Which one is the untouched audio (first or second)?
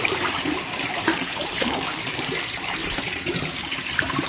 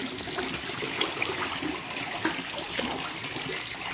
second